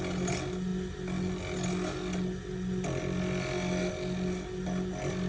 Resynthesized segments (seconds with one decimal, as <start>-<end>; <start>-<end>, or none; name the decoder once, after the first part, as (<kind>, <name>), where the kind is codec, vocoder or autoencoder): none